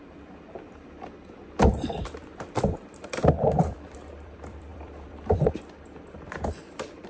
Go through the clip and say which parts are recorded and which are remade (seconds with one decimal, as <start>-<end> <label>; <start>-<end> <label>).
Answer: 0.0-7.1 remade

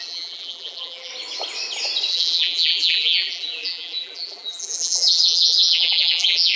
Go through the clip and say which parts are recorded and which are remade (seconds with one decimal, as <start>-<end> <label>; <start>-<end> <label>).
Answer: 0.0-1.1 remade; 1.1-2.1 recorded; 2.1-6.6 remade